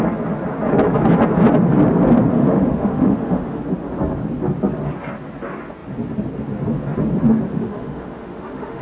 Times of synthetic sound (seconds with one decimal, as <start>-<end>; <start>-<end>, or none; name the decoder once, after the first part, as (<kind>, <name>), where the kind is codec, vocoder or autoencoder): 2.3-3.6 (autoencoder, DAC-VAE); 7.5-8.8